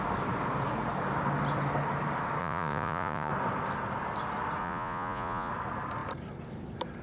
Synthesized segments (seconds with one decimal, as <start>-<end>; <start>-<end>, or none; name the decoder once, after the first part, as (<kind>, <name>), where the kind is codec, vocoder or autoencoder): 2.4-3.3 (vocoder, Vocos); 4.6-5.5